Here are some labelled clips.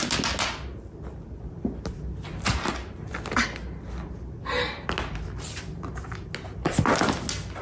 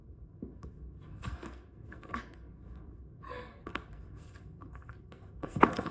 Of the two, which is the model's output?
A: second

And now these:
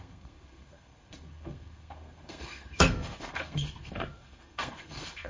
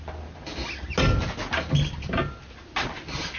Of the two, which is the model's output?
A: first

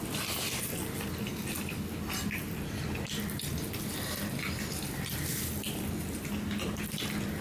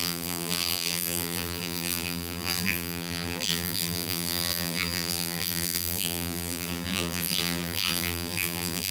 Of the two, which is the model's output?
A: second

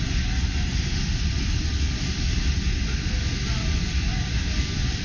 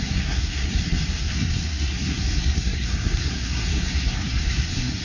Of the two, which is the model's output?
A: second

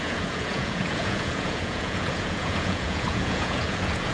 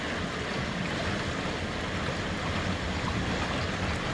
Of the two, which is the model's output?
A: first